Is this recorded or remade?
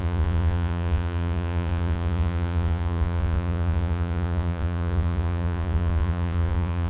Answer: remade